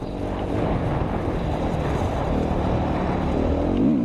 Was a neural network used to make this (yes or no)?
no